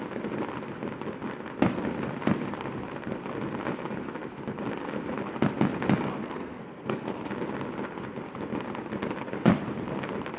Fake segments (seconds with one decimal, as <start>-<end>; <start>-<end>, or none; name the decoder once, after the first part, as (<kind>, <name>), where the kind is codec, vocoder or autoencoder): 6.1-7.3 (codec, SNAC)